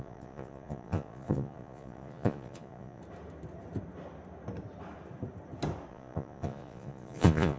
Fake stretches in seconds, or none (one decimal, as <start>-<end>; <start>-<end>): 0.0-3.0; 5.9-7.6